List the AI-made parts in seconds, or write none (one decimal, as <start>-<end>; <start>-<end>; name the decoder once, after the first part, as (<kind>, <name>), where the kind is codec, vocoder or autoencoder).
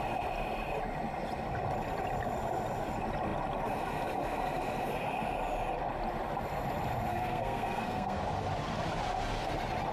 7.1-8.2 (codec, SNAC)